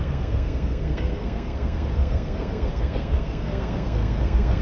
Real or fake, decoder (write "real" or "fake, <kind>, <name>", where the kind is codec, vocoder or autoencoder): fake, codec, SNAC